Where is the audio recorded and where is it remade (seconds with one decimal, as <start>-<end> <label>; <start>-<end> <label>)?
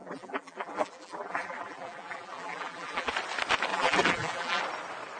0.0-3.1 remade; 3.1-3.7 recorded; 3.7-4.6 remade; 4.6-5.2 recorded